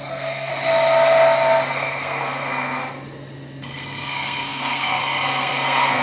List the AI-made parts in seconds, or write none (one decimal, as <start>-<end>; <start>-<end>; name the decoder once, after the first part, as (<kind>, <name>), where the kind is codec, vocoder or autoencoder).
0.0-0.5 (codec, SNAC); 1.7-2.8; 3.6-6.0